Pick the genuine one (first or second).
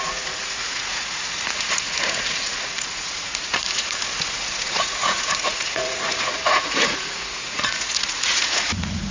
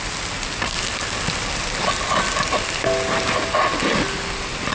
second